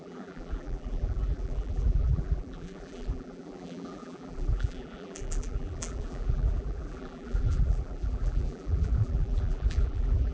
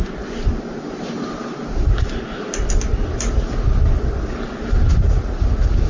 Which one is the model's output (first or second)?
first